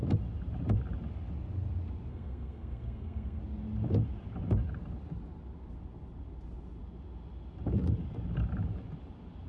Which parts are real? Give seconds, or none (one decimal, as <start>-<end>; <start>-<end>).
0.0-2.1; 3.4-9.5